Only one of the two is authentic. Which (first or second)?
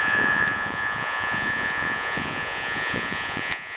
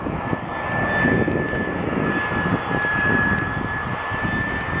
second